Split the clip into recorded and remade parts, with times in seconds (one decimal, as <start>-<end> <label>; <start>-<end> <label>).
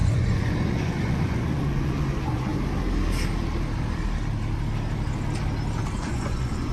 0.0-2.5 remade; 2.5-5.9 recorded; 5.9-6.7 remade